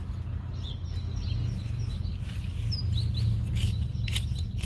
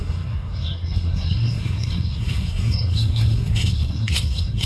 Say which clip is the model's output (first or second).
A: second